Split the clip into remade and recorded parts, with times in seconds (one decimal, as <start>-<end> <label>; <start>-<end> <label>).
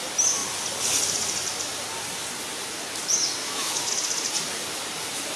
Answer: 0.0-3.4 recorded; 3.4-3.9 remade; 3.9-5.4 recorded